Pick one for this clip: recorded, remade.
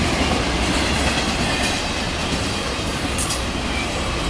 recorded